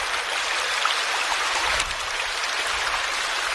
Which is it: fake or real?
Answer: real